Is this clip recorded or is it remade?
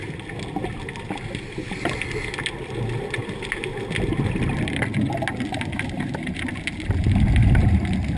recorded